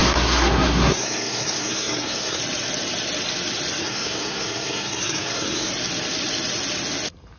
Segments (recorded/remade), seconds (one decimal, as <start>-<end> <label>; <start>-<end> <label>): 0.0-2.4 remade; 2.4-3.8 recorded; 3.8-5.7 remade; 5.7-7.4 recorded